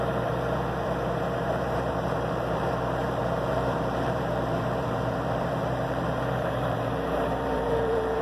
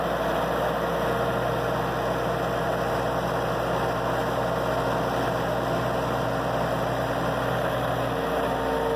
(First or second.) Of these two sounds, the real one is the second